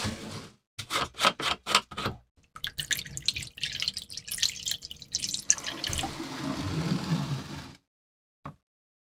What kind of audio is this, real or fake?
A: real